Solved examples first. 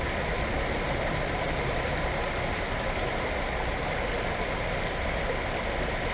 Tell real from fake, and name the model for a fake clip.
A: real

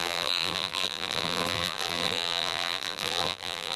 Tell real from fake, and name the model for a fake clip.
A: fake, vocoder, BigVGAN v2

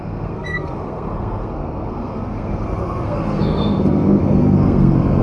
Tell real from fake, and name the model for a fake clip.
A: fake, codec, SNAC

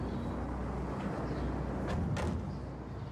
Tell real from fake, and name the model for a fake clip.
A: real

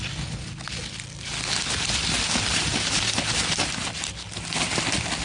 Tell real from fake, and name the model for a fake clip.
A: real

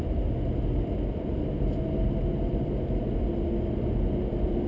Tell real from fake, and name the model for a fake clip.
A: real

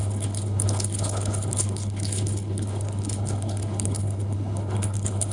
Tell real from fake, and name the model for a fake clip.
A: fake, codec, HILCodec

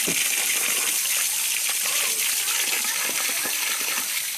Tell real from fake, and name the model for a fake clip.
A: real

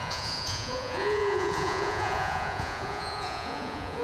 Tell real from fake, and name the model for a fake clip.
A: fake, vocoder, Vocos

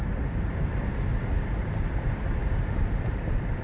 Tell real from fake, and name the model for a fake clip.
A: fake, vocoder, BigVGAN v2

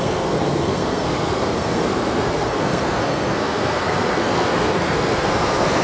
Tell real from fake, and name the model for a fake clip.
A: fake, codec, SNAC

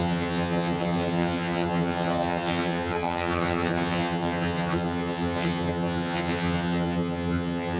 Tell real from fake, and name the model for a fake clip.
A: fake, vocoder, HiFi-GAN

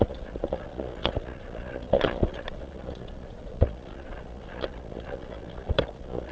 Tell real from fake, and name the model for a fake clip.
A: fake, vocoder, Vocos